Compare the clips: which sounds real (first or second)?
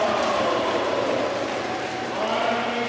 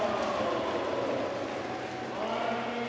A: second